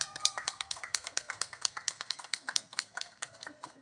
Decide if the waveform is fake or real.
fake